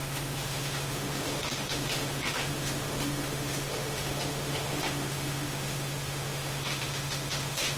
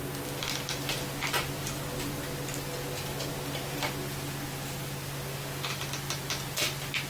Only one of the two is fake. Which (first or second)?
first